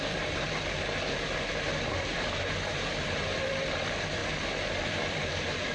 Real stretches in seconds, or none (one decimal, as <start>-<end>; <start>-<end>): 4.2-4.8